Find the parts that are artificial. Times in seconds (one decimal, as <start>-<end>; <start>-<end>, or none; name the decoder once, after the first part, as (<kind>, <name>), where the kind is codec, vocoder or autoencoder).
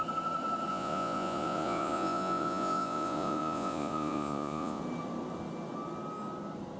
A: 0.7-4.8 (vocoder, Vocos)